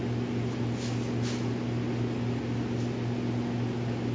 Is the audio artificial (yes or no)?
no